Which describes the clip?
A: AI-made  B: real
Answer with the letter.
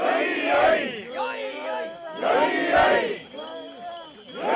B